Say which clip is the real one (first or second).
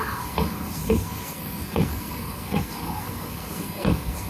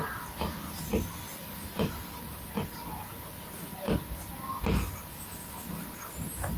second